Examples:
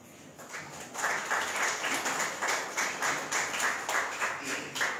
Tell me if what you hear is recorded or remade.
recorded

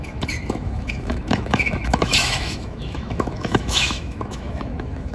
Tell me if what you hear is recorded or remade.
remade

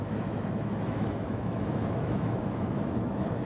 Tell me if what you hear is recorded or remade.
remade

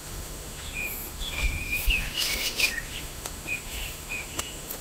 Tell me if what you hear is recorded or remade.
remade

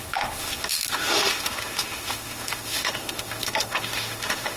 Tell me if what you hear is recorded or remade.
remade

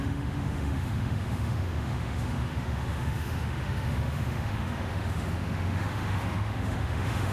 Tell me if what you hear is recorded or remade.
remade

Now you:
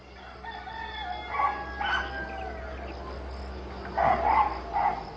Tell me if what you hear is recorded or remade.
recorded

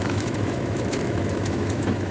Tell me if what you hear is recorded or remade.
remade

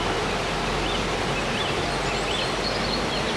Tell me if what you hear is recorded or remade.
recorded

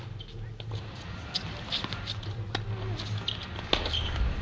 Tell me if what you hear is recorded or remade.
recorded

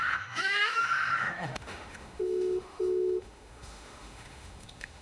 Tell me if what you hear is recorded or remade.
remade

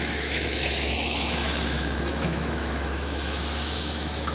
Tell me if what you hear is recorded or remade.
remade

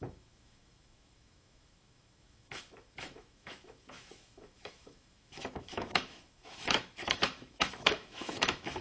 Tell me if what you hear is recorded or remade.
remade